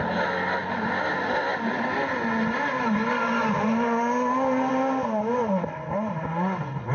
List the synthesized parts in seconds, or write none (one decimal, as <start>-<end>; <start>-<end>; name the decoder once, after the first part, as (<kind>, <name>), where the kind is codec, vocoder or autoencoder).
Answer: none